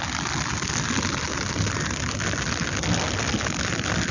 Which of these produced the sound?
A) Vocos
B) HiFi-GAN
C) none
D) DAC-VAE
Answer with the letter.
C